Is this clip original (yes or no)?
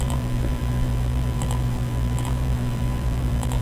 no